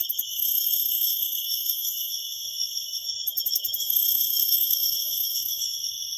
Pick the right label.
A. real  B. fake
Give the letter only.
B